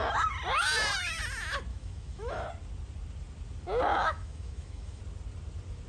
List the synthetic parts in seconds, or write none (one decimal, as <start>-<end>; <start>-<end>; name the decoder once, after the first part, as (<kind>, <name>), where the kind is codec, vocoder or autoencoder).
1.7-2.5 (autoencoder, DAC-VAE); 3.9-5.0